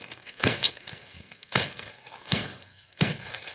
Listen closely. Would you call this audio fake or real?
fake